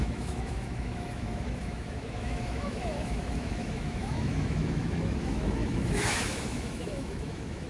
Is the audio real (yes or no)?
no